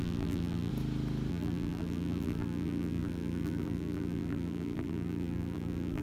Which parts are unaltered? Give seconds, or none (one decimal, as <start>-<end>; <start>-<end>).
0.7-1.3